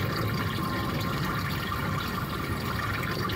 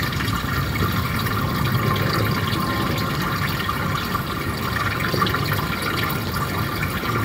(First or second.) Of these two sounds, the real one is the second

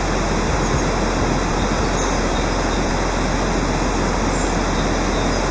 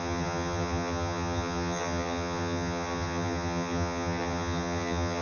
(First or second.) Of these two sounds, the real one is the first